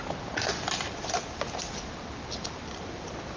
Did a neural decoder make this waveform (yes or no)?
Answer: no